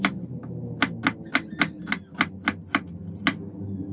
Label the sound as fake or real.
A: real